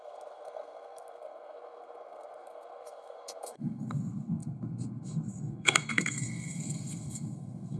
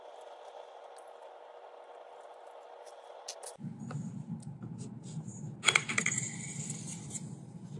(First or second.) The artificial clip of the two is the first